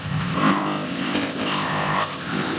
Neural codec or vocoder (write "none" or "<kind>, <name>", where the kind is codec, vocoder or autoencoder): codec, ZipCodec